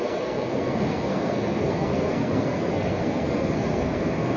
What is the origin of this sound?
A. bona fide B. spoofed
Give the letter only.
B